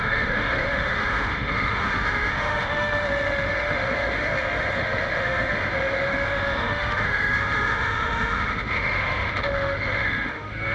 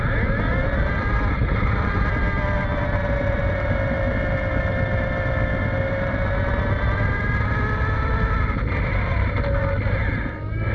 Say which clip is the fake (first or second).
first